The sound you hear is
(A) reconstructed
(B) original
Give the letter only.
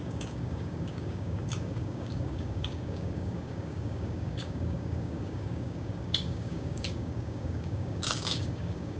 A